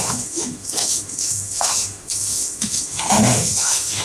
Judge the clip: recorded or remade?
remade